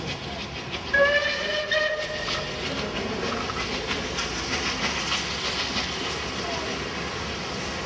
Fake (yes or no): no